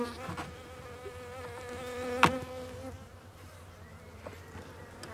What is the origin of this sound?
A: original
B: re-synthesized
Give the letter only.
A